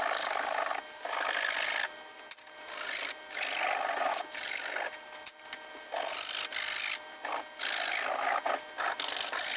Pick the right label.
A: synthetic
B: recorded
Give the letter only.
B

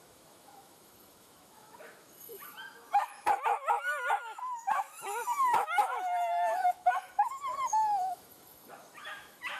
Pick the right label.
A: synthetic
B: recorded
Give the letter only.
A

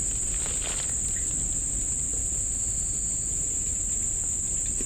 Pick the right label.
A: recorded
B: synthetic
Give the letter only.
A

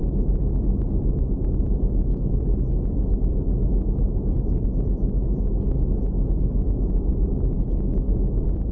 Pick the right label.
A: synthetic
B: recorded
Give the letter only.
B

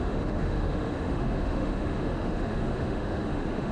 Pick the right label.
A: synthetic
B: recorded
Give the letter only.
A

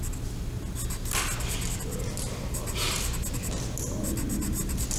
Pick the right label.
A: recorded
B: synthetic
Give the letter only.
A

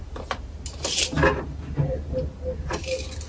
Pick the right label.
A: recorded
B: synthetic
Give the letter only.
A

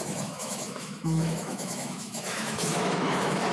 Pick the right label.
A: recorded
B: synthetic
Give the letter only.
B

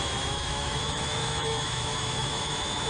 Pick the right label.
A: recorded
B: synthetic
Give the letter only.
B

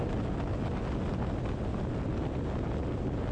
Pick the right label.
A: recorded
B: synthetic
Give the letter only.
A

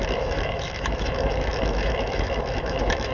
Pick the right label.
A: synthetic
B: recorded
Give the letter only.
A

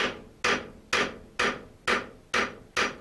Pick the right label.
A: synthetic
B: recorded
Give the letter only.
B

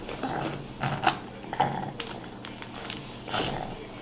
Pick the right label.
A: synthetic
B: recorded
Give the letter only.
B